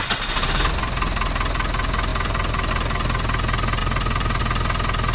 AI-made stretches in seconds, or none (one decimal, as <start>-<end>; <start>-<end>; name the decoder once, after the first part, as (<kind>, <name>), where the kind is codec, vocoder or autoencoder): 3.8-4.4 (vocoder, BigVGAN v2)